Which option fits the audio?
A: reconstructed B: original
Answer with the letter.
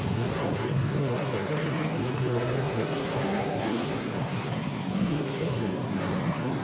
A